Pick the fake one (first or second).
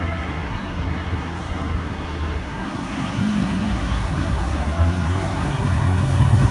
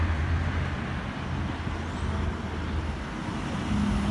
first